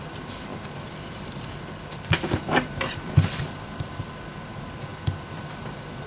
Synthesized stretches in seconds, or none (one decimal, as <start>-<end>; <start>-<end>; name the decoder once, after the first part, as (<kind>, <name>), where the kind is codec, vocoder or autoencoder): 0.5-3.9 (vocoder, BigVGAN v2)